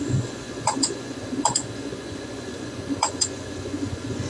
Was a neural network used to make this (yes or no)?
yes